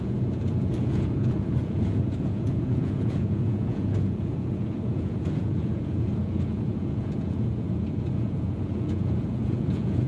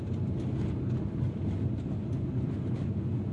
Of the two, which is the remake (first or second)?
first